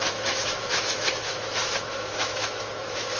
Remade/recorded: remade